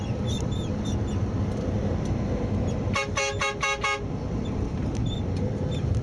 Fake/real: real